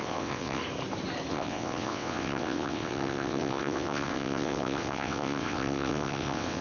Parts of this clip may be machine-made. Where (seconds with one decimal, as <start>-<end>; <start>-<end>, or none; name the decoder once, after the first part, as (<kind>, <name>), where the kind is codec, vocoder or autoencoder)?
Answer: 0.0-0.6 (vocoder, WaveNeXt); 1.3-6.6